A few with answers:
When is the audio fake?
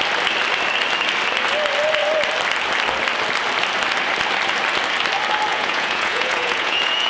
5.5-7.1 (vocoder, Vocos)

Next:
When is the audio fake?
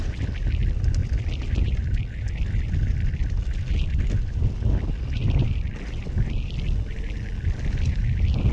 none